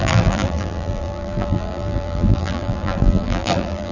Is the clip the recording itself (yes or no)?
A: no